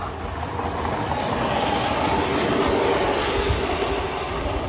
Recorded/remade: recorded